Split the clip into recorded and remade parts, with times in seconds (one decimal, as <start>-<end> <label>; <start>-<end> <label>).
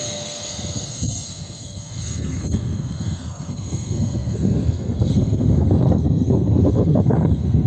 0.0-7.7 remade